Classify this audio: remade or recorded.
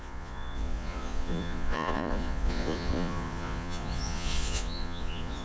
remade